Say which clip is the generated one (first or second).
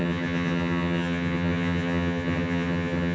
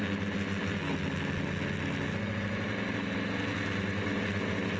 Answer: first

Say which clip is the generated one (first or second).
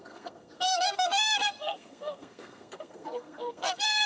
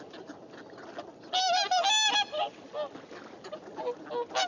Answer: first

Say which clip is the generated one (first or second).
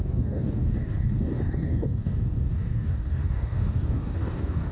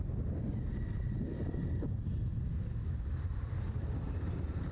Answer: first